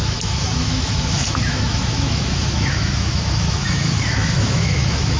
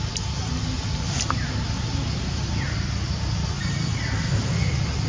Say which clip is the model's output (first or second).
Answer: first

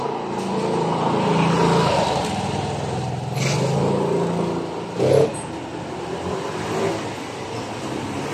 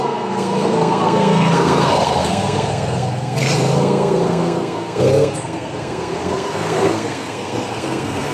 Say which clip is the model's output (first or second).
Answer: second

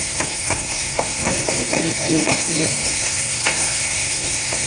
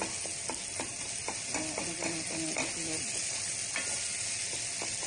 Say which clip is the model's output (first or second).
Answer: first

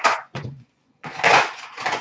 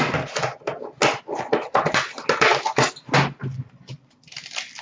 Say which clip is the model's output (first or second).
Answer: first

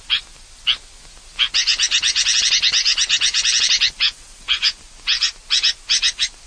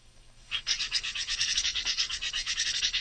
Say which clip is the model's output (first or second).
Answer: second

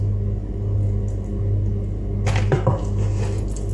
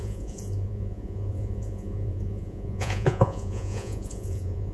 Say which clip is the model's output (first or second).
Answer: second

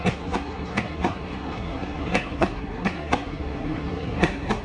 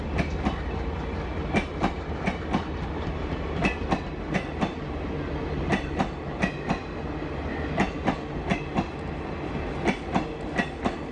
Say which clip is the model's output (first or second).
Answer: first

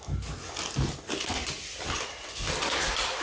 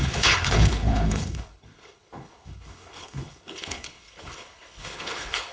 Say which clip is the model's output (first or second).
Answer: second